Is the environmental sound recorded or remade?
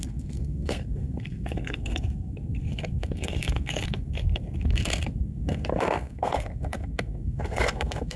remade